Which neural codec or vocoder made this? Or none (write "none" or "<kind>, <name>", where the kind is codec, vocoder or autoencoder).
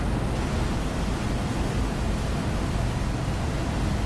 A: none